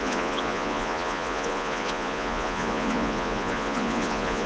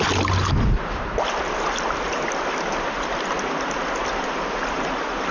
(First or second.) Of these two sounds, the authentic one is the second